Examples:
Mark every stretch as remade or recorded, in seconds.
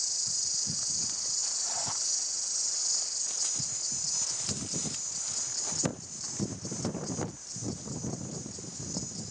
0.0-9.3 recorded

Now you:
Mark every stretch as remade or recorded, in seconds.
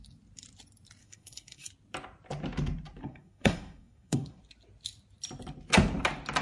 0.0-1.0 recorded; 1.0-1.7 remade; 1.7-3.0 recorded; 3.0-4.4 remade; 4.4-6.4 recorded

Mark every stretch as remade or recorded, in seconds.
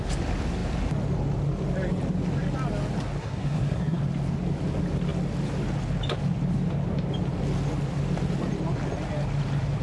0.0-3.2 recorded; 3.2-4.0 remade; 4.0-9.8 recorded